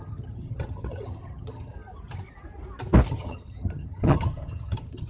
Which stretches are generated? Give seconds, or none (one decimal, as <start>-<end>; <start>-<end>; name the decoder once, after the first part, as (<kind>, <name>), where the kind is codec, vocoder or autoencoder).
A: 0.0-1.7 (vocoder, HiFi-GAN); 3.1-5.1